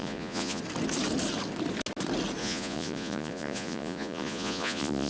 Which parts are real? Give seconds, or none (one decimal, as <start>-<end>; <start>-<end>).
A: 0.6-2.4